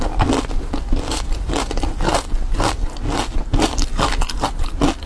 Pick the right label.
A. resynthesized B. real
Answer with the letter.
B